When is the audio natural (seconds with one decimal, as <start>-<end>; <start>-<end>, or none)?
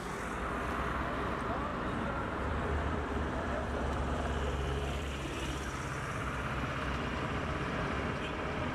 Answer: 0.0-1.7; 5.1-7.1